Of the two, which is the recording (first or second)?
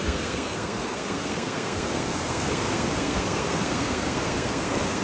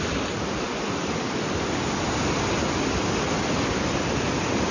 second